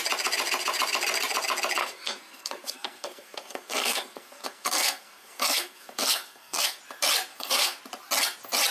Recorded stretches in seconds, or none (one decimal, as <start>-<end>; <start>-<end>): 0.0-1.8; 6.8-7.3; 7.8-8.7